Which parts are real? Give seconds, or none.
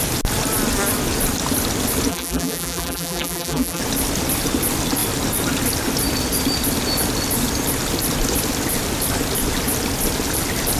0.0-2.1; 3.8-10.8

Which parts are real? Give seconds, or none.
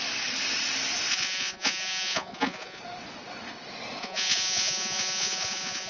0.0-1.1; 2.8-4.0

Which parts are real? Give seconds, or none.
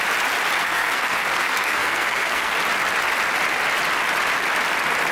0.0-0.6; 2.5-5.1